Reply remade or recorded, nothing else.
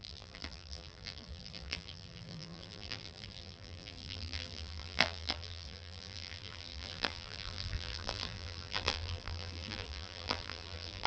remade